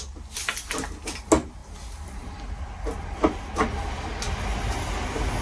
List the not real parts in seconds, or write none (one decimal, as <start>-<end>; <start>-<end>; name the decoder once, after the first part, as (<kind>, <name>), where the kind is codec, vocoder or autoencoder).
none